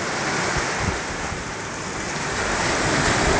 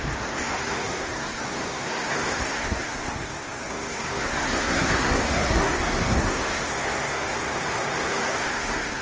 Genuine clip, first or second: first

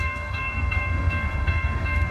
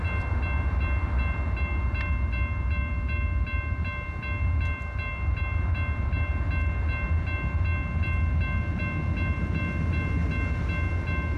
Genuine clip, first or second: second